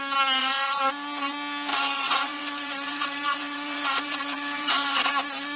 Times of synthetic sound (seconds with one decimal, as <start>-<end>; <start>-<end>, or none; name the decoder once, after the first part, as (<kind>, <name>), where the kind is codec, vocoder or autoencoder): 0.4-0.9 (vocoder, WaveNeXt); 1.7-5.1